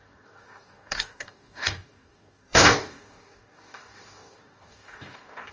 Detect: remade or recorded remade